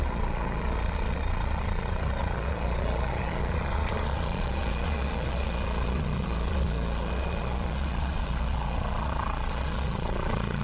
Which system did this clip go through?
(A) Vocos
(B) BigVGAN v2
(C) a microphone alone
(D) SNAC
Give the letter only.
A